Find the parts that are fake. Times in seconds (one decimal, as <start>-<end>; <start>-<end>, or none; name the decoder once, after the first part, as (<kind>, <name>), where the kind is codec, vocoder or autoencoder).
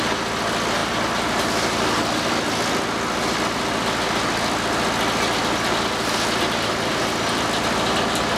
none